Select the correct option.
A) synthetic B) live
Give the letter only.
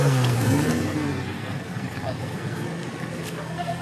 A